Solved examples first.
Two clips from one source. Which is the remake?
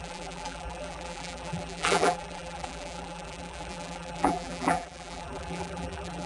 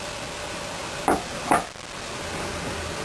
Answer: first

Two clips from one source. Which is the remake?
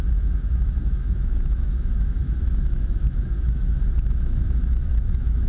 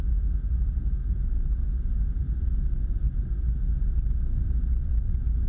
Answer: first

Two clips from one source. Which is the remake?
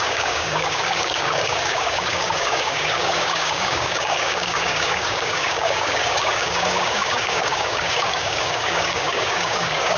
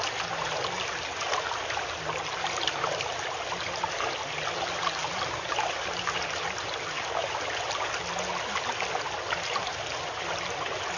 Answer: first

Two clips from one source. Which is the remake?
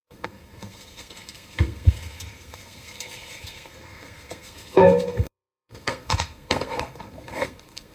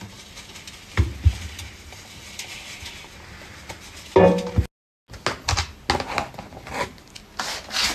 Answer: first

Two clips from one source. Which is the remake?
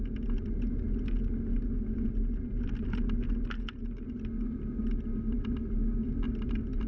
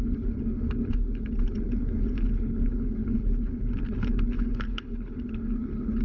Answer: second